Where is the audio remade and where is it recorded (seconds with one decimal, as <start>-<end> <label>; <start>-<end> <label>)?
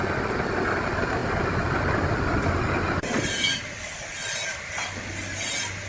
0.0-5.9 recorded